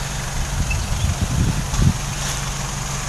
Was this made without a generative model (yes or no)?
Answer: yes